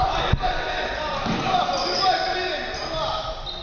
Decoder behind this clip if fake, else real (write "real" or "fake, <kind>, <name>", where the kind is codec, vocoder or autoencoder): real